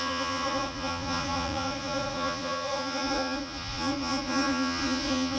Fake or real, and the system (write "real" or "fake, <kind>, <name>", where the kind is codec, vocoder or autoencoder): fake, vocoder, Vocos